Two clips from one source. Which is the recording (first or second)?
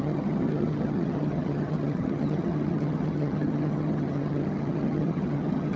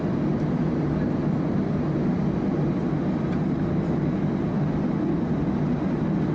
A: second